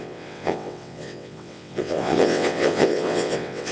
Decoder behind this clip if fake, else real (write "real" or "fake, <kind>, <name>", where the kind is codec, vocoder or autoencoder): fake, vocoder, WaveNeXt